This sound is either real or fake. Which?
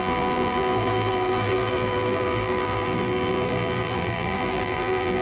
fake